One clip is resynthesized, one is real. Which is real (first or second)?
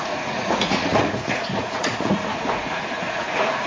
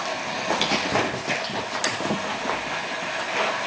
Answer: second